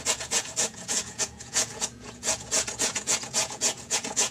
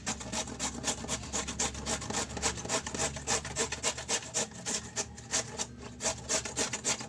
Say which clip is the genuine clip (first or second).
second